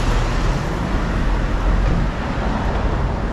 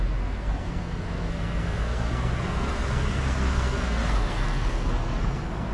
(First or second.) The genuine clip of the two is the first